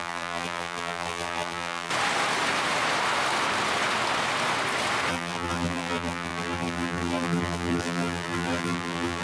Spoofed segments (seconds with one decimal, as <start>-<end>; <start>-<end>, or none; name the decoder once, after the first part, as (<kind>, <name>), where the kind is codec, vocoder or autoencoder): 0.0-1.9 (vocoder, BigVGAN v2); 5.1-9.2